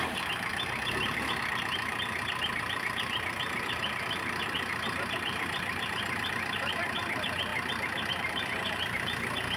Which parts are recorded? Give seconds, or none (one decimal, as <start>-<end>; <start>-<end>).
7.5-8.1